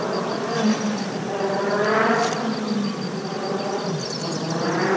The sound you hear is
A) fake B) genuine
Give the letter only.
B